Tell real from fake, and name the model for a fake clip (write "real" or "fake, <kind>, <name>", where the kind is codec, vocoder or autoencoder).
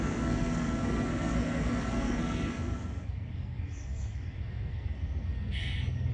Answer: fake, codec, SNAC